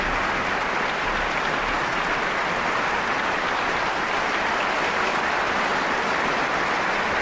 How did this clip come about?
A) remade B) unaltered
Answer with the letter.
B